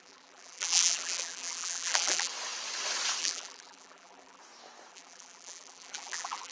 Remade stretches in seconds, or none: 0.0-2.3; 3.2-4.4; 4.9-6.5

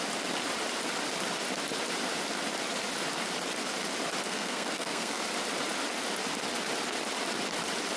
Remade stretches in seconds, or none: 4.2-5.2

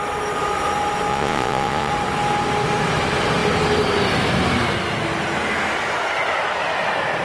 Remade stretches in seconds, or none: 1.1-1.9

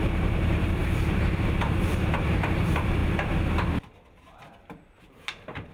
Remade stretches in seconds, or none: 0.0-3.0; 5.0-5.7

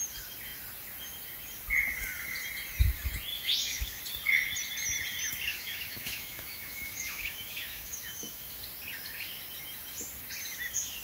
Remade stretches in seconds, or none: 3.3-4.0; 5.5-8.6

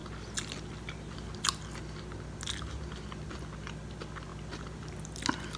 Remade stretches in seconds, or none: none

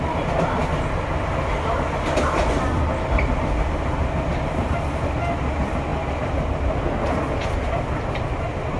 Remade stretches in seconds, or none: none